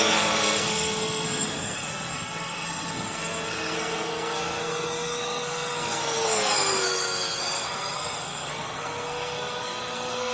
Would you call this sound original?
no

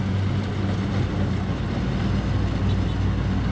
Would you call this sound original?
yes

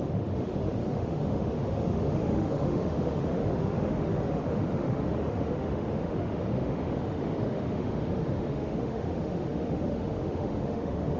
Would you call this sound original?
no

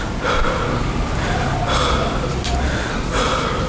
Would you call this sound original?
yes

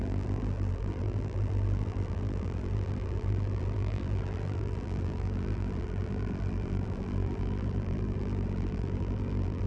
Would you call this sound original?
no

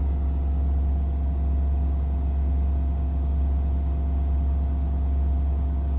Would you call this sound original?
yes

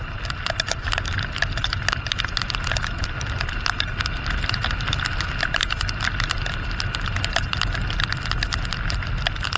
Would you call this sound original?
yes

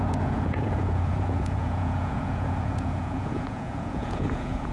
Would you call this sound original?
no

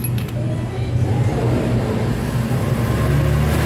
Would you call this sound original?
yes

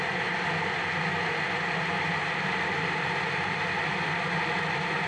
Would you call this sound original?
yes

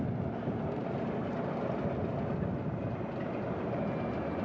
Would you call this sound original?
yes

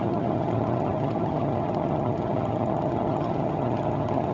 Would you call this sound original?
no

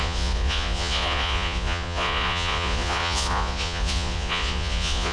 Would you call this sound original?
no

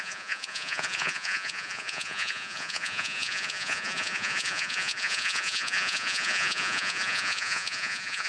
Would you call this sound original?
no